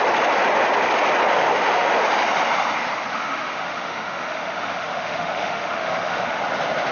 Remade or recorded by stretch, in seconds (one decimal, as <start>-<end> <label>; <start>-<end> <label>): 0.0-1.3 recorded; 1.3-1.9 remade; 1.9-3.1 recorded; 3.1-6.4 remade; 6.4-6.9 recorded